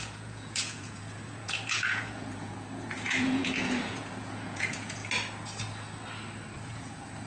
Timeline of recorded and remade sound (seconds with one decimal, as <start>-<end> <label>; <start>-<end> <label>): 0.0-5.0 remade; 5.0-6.7 recorded; 6.7-7.3 remade